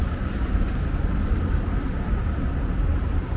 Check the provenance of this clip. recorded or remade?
recorded